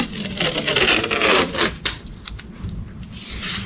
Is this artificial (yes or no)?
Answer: no